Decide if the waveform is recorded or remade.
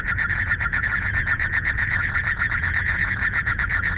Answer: remade